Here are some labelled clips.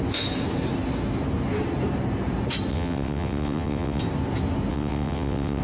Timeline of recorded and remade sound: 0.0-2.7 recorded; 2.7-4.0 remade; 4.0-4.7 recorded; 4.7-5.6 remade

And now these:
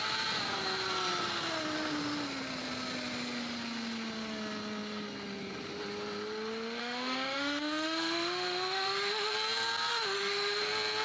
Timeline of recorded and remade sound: 0.0-6.8 recorded; 6.8-9.3 remade; 9.3-9.9 recorded; 9.9-10.6 remade; 10.6-11.0 recorded